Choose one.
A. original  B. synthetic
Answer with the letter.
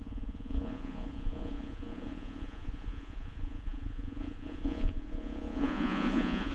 B